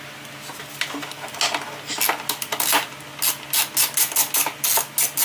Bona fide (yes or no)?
yes